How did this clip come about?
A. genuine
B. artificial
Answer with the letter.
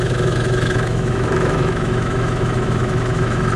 B